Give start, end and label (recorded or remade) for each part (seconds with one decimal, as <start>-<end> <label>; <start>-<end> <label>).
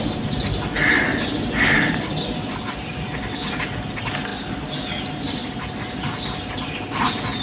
0.0-7.4 recorded